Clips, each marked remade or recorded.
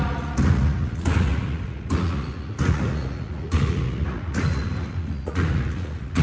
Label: remade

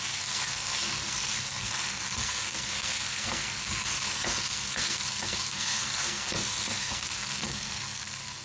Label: remade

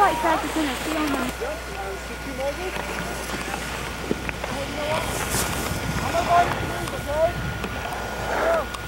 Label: recorded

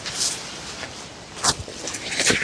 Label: remade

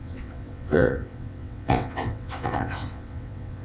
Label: remade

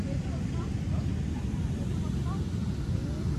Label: recorded